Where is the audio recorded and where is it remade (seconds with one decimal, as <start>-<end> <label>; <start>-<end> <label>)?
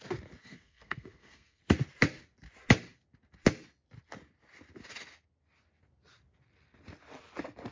0.0-0.4 recorded; 0.4-1.6 remade; 1.6-7.7 recorded